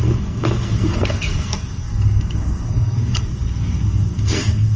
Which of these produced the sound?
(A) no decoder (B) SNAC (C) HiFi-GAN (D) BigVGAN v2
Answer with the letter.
B